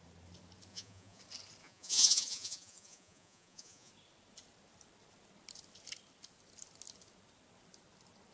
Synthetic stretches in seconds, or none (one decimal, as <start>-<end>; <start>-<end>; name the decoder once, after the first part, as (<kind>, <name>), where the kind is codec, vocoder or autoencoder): 0.7-1.2 (vocoder, Vocos); 1.6-3.9